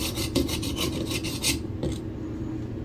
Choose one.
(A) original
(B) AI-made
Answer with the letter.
A